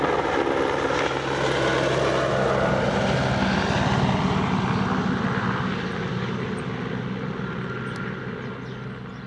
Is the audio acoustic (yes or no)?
yes